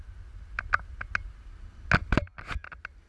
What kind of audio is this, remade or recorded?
recorded